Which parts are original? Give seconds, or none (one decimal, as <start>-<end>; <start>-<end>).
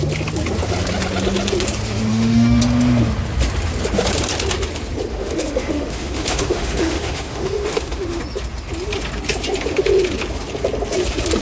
0.0-2.1; 2.6-5.1; 8.2-11.4